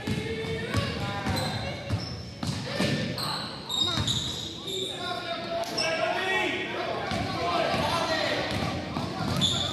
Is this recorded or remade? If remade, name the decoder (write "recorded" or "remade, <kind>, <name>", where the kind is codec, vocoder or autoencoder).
recorded